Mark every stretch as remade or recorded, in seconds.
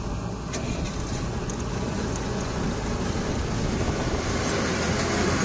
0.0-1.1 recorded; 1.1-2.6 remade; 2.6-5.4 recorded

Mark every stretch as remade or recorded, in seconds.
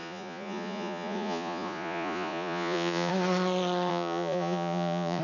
0.0-3.1 remade; 3.1-3.9 recorded; 3.9-5.2 remade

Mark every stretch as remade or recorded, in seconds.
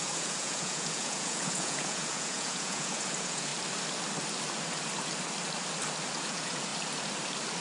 0.0-3.5 remade; 3.5-6.2 recorded; 6.2-6.7 remade; 6.7-7.6 recorded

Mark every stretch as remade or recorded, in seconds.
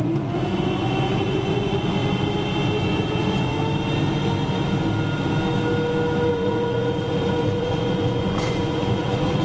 0.0-2.0 remade; 2.0-2.8 recorded; 2.8-3.5 remade; 3.5-6.3 recorded; 6.3-9.4 remade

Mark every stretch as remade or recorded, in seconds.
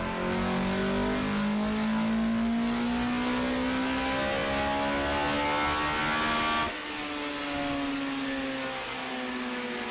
0.0-9.9 recorded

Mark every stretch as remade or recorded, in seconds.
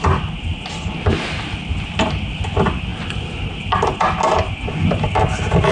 0.0-5.7 recorded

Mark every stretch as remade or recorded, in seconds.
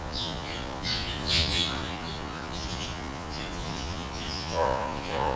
0.0-5.4 remade